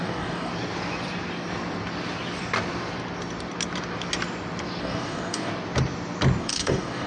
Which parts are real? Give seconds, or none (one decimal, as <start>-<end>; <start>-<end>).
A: 0.5-4.8; 5.5-6.4